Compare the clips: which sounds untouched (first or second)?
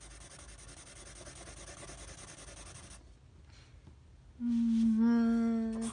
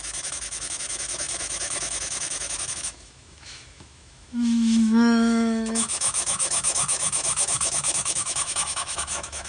first